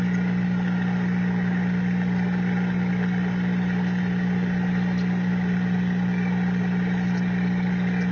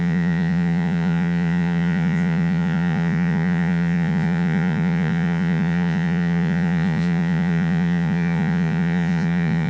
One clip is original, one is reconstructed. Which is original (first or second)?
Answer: first